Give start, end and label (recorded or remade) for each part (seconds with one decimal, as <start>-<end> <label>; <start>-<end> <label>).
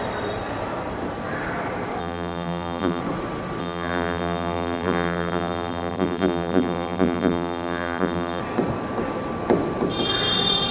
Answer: 0.0-2.0 recorded; 2.0-3.0 remade; 3.0-3.6 recorded; 3.6-8.4 remade; 8.4-10.7 recorded